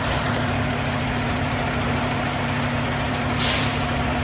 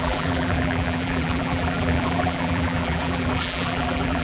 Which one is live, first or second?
first